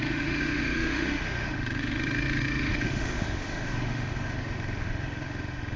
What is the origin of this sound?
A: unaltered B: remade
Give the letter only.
B